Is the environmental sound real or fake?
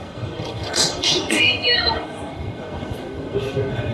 fake